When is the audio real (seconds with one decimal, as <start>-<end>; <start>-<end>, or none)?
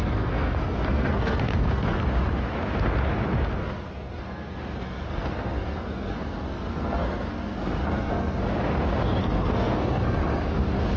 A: 2.0-3.6; 8.4-9.2; 10.4-11.0